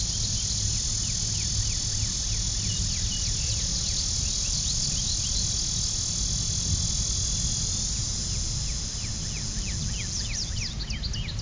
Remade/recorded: recorded